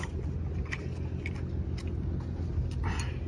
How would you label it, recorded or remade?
recorded